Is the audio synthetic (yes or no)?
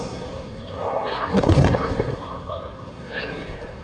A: yes